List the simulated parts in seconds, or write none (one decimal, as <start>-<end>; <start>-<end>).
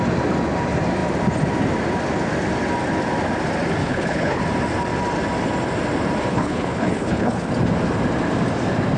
3.8-4.4; 6.3-7.5